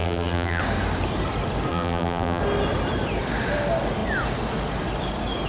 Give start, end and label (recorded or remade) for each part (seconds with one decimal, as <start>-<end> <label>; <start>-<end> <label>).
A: 0.0-0.6 remade; 0.6-1.7 recorded; 1.7-2.4 remade; 2.4-5.5 recorded